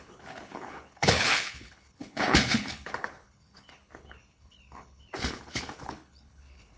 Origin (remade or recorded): remade